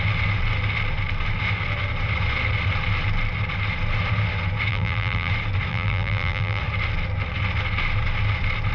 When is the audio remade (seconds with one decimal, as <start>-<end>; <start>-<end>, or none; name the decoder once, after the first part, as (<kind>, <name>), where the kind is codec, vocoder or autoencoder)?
4.7-5.3 (vocoder, BigVGAN v2); 5.7-6.6